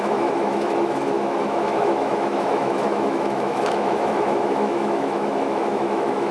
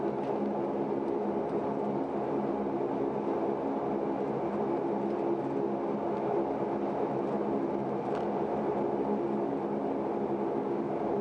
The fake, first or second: first